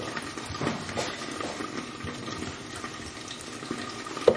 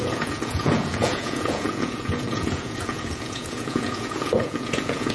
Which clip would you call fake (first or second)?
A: second